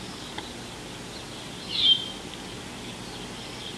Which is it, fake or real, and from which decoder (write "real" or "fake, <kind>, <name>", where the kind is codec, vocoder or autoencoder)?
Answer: real